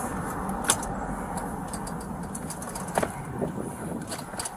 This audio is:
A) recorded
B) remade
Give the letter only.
A